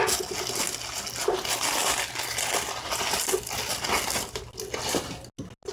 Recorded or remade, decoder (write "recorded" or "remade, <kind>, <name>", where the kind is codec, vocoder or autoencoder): recorded